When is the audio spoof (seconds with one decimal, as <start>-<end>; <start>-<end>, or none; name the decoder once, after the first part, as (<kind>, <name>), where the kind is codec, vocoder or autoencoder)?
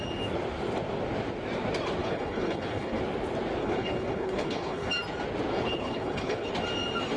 2.0-3.0 (codec, HILCodec); 3.6-4.9; 5.5-6.5